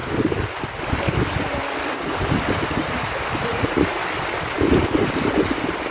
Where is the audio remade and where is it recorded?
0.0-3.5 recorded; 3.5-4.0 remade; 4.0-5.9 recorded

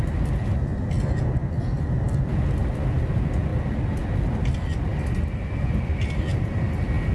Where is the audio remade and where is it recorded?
0.0-7.1 recorded

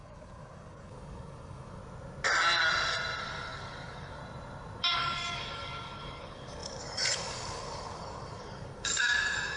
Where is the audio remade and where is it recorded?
0.0-1.8 remade; 1.8-3.2 recorded; 3.2-4.2 remade; 4.2-4.8 recorded; 4.8-9.6 remade

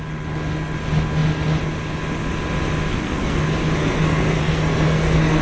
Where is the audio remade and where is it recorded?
0.0-2.9 recorded; 2.9-3.4 remade; 3.4-3.8 recorded; 3.8-5.4 remade

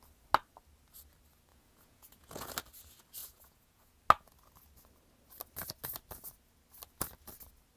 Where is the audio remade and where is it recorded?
0.0-1.5 recorded; 1.5-2.5 remade; 2.5-3.2 recorded; 3.2-4.0 remade; 4.0-7.8 recorded

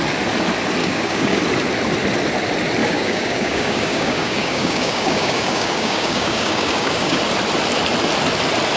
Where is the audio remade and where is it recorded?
0.0-0.8 recorded; 0.8-1.4 remade; 1.4-2.8 recorded; 2.8-7.2 remade; 7.2-8.8 recorded